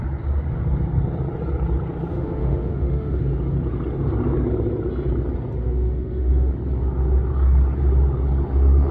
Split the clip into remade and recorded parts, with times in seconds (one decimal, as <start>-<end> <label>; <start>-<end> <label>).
0.0-2.1 recorded; 2.1-3.2 remade; 3.2-5.6 recorded; 5.6-6.5 remade; 6.5-8.9 recorded